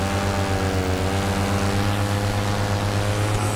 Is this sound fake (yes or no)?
no